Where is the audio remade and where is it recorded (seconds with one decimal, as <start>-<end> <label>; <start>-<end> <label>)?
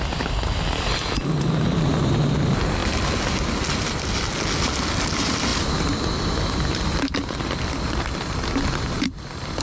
0.0-9.6 recorded